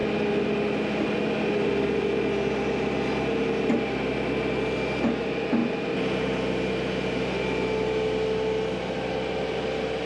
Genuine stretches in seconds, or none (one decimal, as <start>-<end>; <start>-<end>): 0.0-10.1